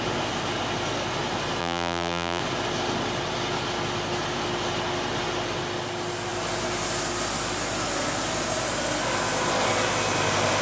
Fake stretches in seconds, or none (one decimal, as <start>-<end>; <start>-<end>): 1.6-2.4